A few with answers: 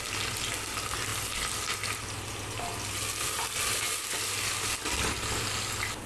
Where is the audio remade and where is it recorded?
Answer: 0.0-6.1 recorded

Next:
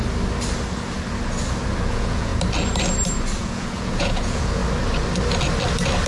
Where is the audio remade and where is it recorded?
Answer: 0.0-1.9 recorded; 1.9-2.3 remade; 2.3-3.4 recorded; 3.4-4.6 remade; 4.6-6.1 recorded

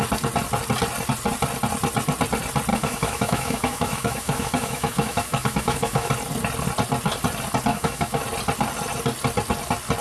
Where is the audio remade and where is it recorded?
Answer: 0.0-2.7 recorded; 2.7-6.1 remade; 6.1-7.7 recorded; 7.7-8.2 remade; 8.2-10.0 recorded